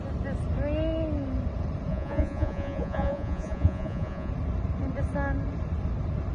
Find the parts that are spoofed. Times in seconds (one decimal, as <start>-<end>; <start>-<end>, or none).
1.9-4.3